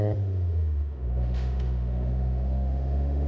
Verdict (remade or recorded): remade